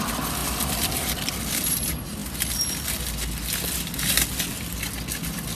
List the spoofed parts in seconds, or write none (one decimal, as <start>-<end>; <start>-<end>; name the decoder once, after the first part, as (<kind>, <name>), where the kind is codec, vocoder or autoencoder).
none